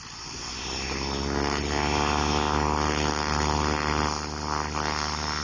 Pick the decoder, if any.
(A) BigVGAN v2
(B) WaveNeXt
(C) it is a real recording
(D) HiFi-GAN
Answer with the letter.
C